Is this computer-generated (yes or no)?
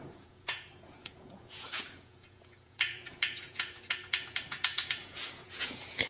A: yes